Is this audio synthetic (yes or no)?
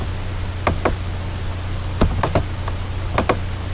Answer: no